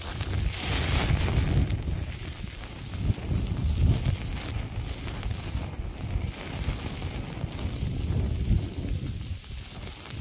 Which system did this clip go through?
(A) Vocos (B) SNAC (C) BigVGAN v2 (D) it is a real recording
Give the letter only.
D